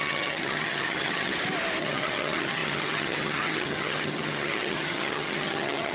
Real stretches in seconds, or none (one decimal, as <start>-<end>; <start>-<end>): 1.3-1.8